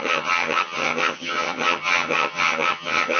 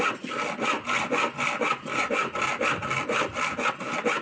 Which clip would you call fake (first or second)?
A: first